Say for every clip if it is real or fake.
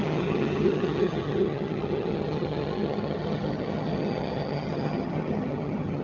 fake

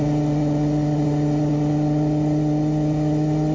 real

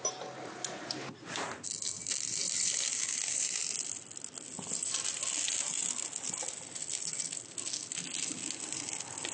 real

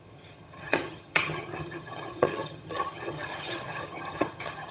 fake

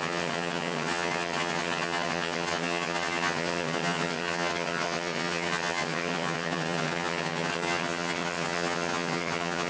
fake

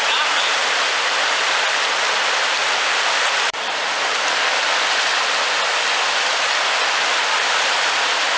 real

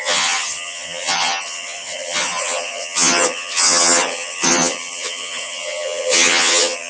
fake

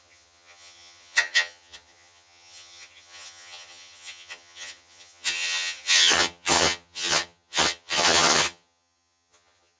fake